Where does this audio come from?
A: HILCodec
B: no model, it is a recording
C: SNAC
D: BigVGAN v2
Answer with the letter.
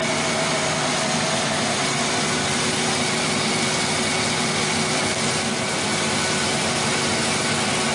B